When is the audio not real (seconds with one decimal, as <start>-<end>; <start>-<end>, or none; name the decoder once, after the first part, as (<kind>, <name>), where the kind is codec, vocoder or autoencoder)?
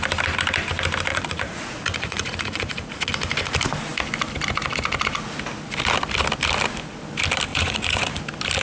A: 1.1-3.1 (vocoder, Vocos); 7.5-8.2